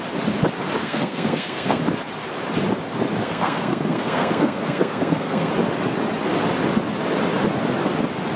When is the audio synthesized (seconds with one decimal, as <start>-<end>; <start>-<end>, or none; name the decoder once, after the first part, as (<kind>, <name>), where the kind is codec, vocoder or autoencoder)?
0.8-1.8 (codec, SNAC); 3.2-5.5